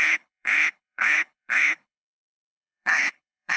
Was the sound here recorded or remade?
remade